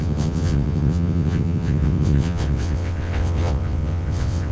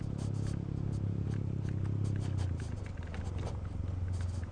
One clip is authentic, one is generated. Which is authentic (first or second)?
second